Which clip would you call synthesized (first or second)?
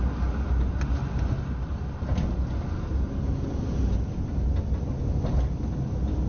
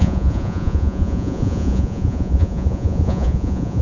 second